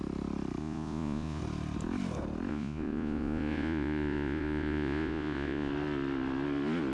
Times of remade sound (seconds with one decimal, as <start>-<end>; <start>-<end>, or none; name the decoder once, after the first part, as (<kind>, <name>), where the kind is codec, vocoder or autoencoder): 0.6-1.4 (vocoder, Vocos); 2.5-5.7